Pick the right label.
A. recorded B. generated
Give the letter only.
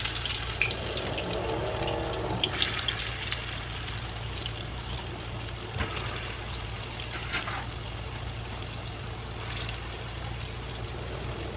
A